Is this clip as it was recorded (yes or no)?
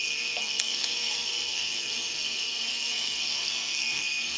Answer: no